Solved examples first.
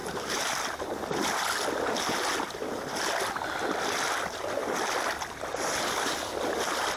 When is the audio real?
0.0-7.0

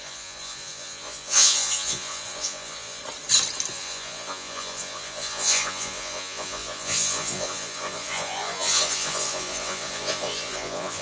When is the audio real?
3.0-3.7

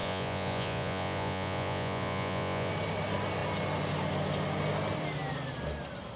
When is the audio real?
2.7-6.2

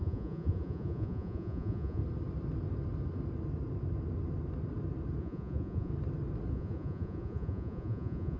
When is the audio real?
2.0-5.2; 5.9-6.5

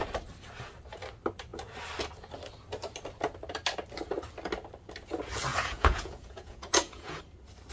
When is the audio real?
0.0-5.5; 7.2-7.7

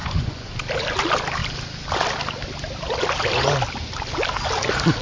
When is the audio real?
0.5-5.0

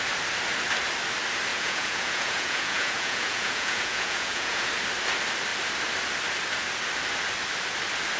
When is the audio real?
0.0-1.5; 4.7-8.2

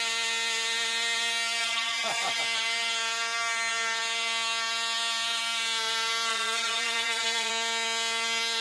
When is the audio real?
0.0-1.6; 2.4-6.3; 7.5-8.6